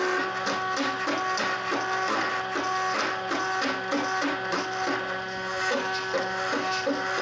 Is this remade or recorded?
recorded